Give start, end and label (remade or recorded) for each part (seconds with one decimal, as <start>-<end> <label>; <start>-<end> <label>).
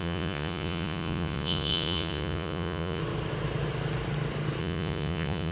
0.0-3.0 remade; 3.0-4.6 recorded; 4.6-5.5 remade